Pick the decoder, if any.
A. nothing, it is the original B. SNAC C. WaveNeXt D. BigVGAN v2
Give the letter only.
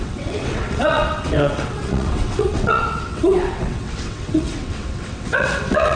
C